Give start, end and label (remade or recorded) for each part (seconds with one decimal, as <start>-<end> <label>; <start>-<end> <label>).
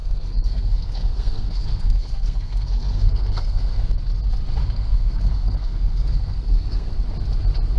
0.0-4.0 remade; 4.0-4.6 recorded; 4.6-6.9 remade; 6.9-7.8 recorded